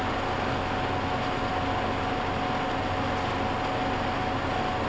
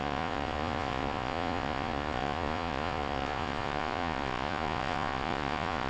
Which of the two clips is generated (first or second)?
second